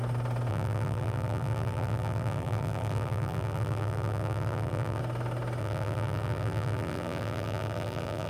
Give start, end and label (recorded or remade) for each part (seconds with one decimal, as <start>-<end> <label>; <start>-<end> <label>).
0.0-0.5 recorded; 0.5-5.0 remade; 5.0-5.6 recorded; 5.6-8.3 remade